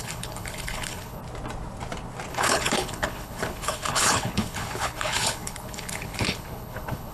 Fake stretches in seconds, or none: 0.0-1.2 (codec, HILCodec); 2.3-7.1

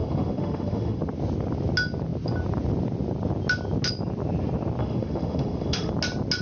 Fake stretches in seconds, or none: 0.0-1.0 (autoencoder, DAC-VAE); 4.8-5.9

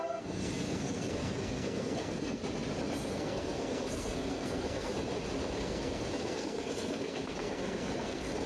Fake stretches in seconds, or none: 0.0-2.4 (codec, SNAC); 3.1-4.9; 5.5-8.5